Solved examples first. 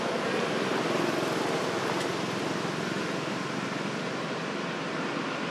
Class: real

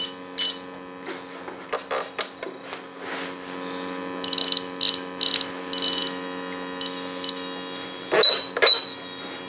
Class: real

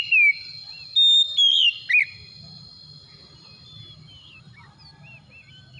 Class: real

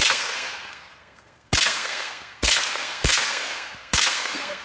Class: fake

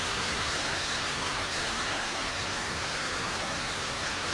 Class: fake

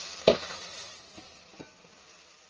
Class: real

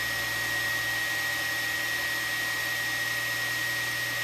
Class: real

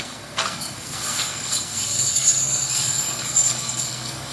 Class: fake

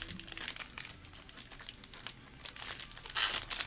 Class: real